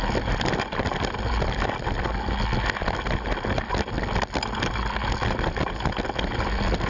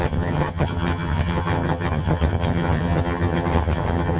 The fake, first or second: second